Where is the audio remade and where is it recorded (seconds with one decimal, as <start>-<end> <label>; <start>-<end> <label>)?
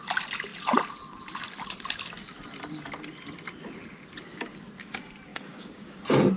0.0-5.3 recorded; 5.3-6.0 remade; 6.0-6.4 recorded